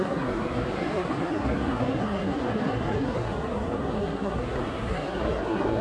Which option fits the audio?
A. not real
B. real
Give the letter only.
A